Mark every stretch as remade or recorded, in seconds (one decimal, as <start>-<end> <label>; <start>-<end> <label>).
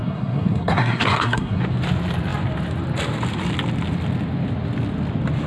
0.0-1.6 remade; 1.6-5.5 recorded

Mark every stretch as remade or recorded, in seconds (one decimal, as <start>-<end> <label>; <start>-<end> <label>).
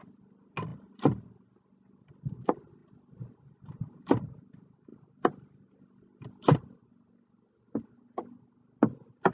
0.0-9.3 recorded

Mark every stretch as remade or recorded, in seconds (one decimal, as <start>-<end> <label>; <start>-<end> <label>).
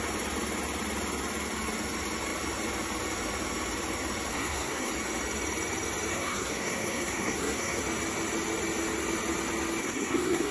0.0-4.3 recorded; 4.3-4.9 remade; 4.9-6.1 recorded; 6.1-7.8 remade; 7.8-9.8 recorded; 9.8-10.5 remade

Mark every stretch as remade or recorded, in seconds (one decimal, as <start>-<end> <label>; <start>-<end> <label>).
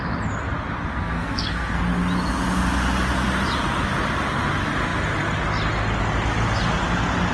0.0-0.9 recorded; 0.9-1.8 remade; 1.8-7.3 recorded